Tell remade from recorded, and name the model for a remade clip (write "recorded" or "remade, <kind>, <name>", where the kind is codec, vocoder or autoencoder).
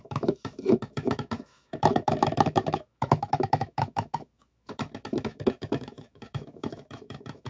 remade, autoencoder, DAC-VAE